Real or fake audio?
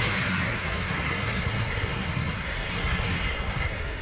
fake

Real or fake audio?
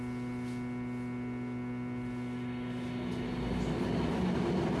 real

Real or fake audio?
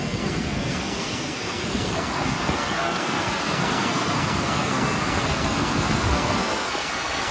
fake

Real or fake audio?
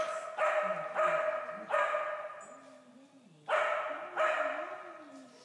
real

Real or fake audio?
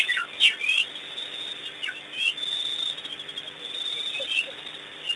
real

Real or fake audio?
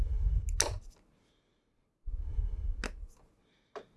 real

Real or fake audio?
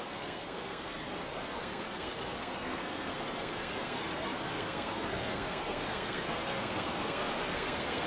fake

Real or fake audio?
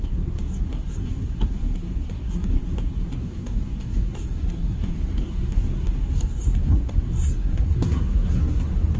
fake